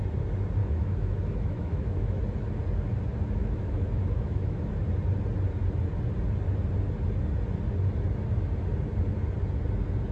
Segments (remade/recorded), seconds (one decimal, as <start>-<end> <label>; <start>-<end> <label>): 0.0-0.6 recorded; 0.6-2.2 remade; 2.2-3.4 recorded; 3.4-4.7 remade; 4.7-10.1 recorded